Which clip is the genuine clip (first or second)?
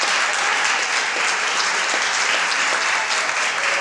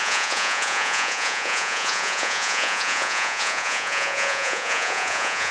first